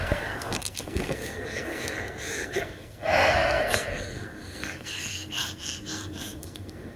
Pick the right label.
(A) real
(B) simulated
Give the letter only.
B